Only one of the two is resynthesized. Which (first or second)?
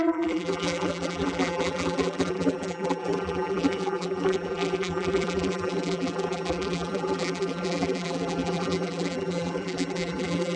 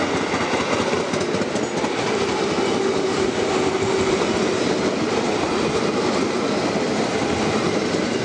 first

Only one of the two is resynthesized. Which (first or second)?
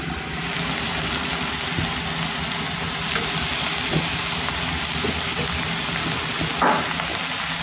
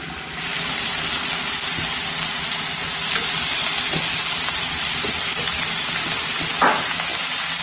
second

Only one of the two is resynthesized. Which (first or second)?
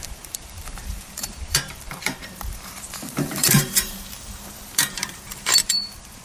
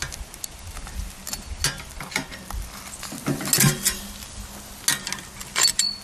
first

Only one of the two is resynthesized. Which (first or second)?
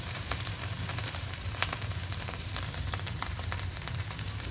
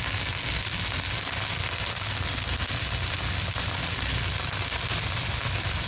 first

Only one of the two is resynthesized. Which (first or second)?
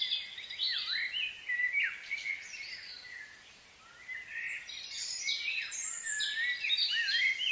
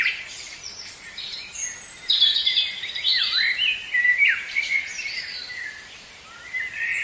second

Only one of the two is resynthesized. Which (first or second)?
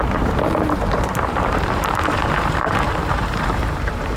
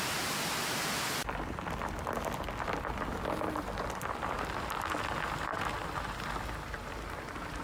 first